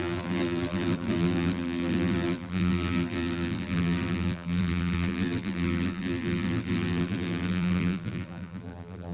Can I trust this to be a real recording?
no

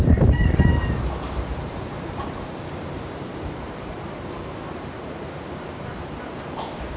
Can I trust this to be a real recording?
no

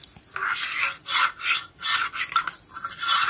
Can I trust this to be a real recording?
yes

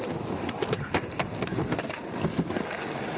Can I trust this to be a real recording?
yes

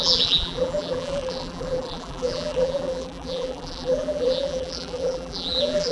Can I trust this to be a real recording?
no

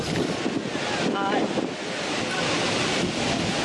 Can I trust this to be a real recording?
yes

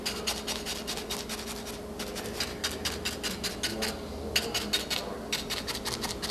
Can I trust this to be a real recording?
yes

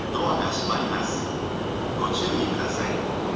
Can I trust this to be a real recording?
yes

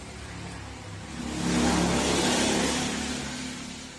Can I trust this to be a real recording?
yes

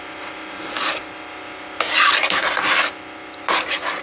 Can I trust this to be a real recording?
yes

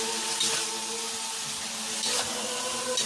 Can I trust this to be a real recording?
yes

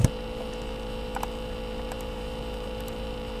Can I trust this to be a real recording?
no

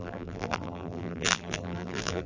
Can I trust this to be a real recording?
no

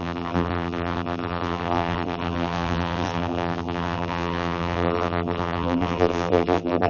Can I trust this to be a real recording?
no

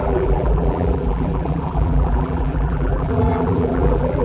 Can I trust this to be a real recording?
no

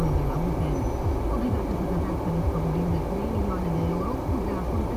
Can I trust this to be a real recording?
yes